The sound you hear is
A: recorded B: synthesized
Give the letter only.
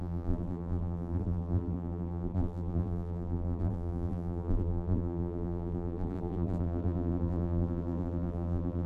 B